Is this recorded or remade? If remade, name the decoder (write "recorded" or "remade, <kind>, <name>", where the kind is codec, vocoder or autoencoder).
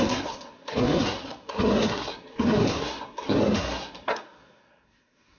remade, codec, SNAC